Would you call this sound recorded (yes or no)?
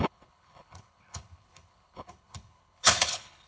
no